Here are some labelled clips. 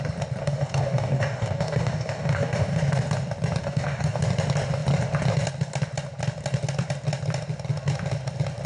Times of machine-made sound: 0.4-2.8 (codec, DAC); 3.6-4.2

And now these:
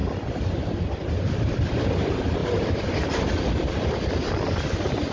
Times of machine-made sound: none

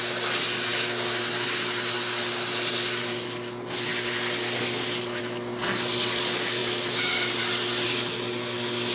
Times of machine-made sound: none

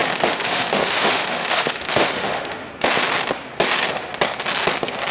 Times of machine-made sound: 0.0-2.7 (autoencoder, DAC-VAE)

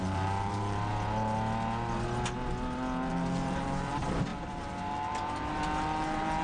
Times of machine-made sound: 0.0-0.9 (vocoder, BigVGAN v2); 3.1-6.4